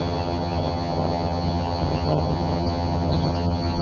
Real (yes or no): no